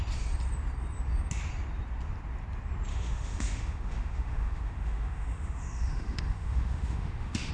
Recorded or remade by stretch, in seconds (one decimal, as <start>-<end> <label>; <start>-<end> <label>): 0.0-2.9 recorded; 2.9-7.5 remade